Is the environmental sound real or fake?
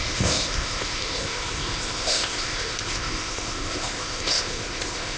fake